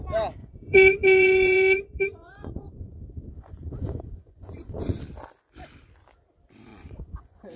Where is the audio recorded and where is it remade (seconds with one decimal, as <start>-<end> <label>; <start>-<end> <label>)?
0.0-0.4 recorded; 0.4-5.0 remade; 5.0-6.7 recorded; 6.7-7.6 remade